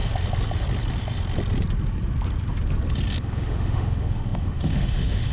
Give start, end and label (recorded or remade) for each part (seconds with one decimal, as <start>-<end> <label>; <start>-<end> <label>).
0.0-3.2 recorded; 3.2-5.3 remade